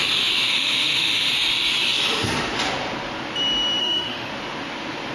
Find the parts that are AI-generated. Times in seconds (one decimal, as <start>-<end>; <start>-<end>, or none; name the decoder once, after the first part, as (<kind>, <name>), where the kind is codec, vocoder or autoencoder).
0.5-1.3 (autoencoder, DAC-VAE); 3.8-4.3